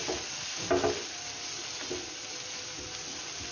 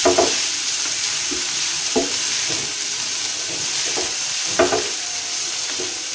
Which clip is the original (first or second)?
first